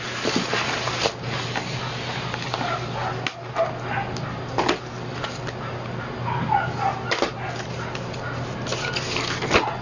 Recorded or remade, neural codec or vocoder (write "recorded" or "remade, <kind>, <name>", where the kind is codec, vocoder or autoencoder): recorded